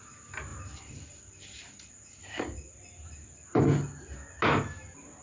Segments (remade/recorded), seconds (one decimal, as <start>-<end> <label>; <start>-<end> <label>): 0.0-0.5 recorded; 0.5-3.6 remade; 3.6-5.2 recorded